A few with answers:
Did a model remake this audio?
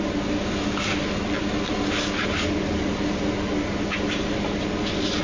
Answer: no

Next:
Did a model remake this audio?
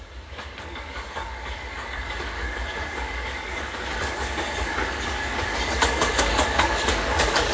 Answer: yes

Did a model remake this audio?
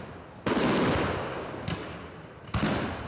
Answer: no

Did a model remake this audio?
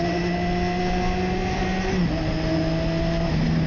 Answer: no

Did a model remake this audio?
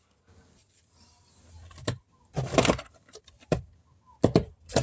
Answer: no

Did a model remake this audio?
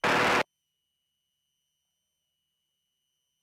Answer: no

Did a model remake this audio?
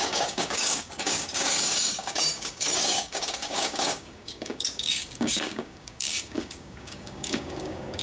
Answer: yes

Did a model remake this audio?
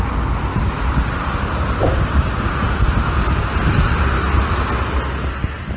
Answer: no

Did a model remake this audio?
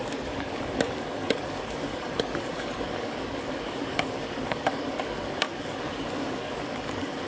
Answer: yes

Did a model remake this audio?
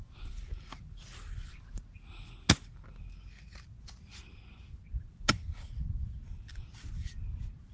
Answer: no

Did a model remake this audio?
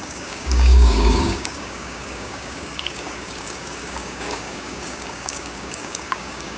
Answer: yes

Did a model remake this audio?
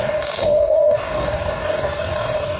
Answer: yes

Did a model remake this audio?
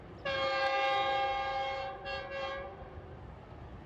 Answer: no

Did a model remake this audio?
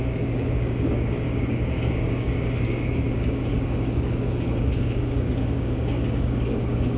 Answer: yes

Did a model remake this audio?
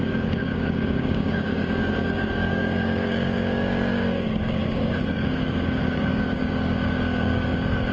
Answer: yes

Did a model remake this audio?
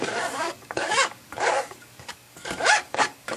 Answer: yes